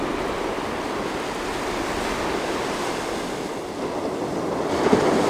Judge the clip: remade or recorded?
recorded